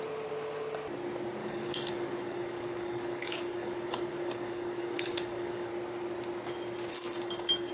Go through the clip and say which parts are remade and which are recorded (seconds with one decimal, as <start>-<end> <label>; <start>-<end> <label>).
0.0-1.4 recorded; 1.4-5.7 remade; 5.7-6.9 recorded; 6.9-7.7 remade